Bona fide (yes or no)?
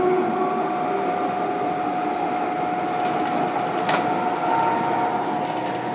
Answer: yes